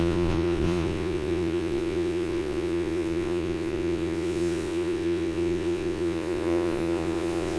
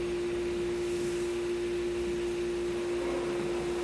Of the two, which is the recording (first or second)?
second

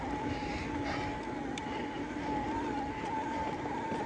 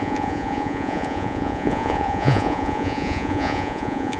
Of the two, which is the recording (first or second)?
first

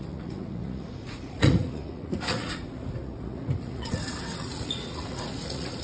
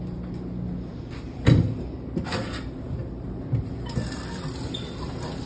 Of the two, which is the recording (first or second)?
second